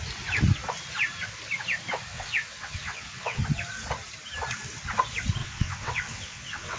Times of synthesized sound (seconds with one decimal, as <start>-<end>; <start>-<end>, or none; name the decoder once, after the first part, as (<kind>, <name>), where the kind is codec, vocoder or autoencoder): 2.1-3.4 (vocoder, WaveNeXt); 5.4-6.8